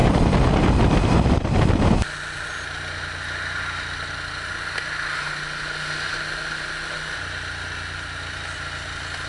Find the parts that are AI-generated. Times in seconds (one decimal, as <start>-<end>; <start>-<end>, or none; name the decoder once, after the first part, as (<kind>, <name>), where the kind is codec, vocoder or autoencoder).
none